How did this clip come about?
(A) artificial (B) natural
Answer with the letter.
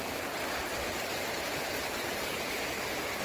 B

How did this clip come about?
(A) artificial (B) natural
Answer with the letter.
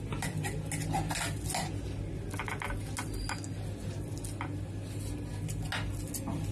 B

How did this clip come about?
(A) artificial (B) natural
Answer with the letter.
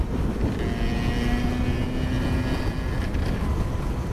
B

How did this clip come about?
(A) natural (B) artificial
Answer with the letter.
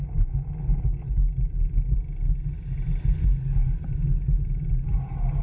A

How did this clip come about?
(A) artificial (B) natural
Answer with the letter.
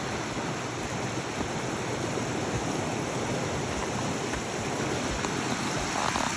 B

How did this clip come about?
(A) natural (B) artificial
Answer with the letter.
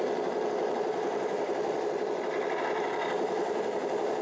A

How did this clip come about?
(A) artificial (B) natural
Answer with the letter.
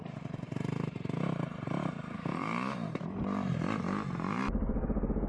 A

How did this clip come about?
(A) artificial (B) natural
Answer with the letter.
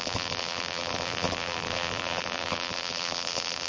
A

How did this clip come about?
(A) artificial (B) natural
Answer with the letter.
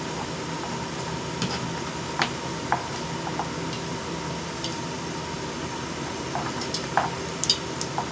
B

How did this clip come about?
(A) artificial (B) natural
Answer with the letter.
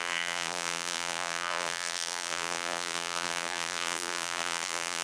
A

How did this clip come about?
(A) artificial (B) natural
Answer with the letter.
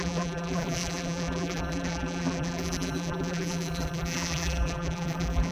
A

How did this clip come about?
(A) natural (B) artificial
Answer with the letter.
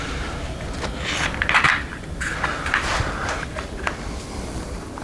B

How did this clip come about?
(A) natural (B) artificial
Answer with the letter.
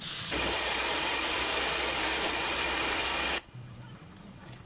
B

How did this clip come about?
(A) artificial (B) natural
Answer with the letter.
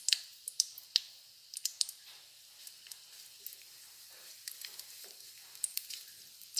B